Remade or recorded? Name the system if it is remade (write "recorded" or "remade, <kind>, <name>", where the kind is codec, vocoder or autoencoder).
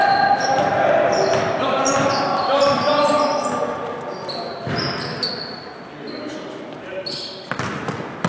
recorded